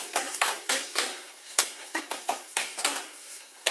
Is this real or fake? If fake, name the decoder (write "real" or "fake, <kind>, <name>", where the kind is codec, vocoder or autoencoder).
fake, codec, SNAC